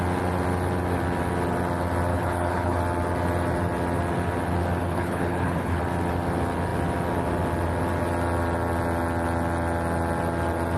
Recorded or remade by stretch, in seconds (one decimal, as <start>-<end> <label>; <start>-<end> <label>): 0.0-2.1 recorded; 2.1-2.8 remade; 2.8-4.8 recorded; 4.8-5.8 remade; 5.8-10.8 recorded